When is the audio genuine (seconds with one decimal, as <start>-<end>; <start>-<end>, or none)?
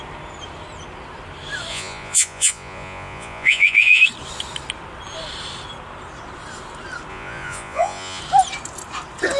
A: 0.0-1.7; 4.0-7.1; 8.2-9.4